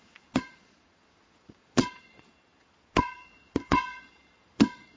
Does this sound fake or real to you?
fake